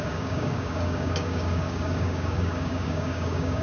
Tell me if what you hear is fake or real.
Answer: fake